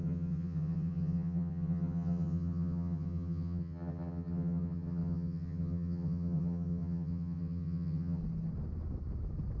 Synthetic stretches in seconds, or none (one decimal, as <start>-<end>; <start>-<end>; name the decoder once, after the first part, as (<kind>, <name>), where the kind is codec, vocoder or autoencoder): 0.0-8.2 (vocoder, HiFi-GAN)